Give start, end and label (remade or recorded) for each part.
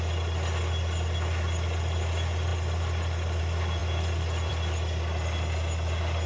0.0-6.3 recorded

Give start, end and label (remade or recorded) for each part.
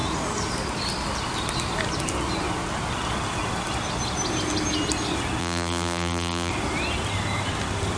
0.0-5.4 recorded; 5.4-6.5 remade; 6.5-8.0 recorded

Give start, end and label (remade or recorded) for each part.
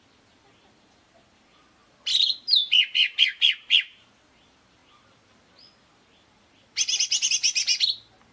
0.0-1.8 recorded; 1.8-4.1 remade; 4.1-8.3 recorded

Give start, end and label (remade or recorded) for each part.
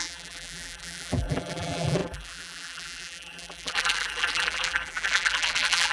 0.0-5.9 remade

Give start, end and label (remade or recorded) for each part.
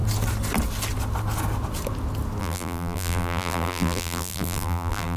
0.0-2.4 recorded; 2.4-5.2 remade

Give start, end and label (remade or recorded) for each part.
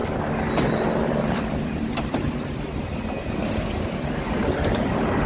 0.0-1.1 recorded; 1.1-2.7 remade; 2.7-4.4 recorded; 4.4-5.3 remade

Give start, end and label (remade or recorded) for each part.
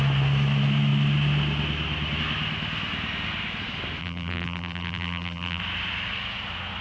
0.0-4.0 recorded; 4.0-5.6 remade; 5.6-6.8 recorded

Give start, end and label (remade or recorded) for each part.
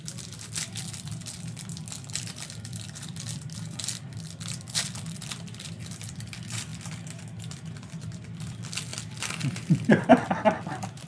0.0-6.7 remade; 6.7-7.8 recorded; 7.8-8.9 remade; 8.9-9.5 recorded; 9.5-10.1 remade; 10.1-11.1 recorded